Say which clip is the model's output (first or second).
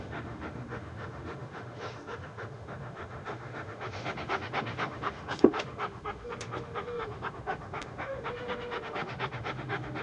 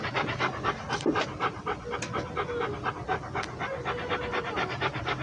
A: first